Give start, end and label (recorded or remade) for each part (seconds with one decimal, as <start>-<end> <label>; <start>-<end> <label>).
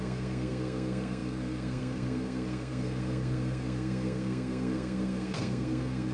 0.0-6.1 remade